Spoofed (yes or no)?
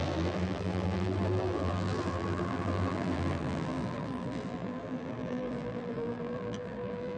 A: yes